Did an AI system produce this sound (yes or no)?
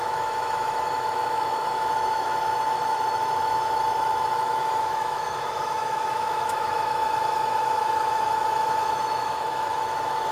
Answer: yes